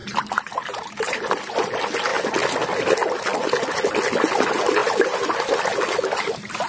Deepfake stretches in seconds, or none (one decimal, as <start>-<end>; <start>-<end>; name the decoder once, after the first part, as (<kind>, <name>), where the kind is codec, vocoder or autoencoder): 0.0-1.4 (vocoder, BigVGAN v2); 4.8-5.5